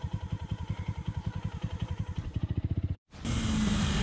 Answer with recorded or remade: recorded